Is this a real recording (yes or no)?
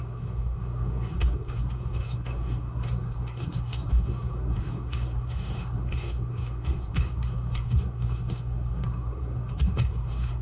no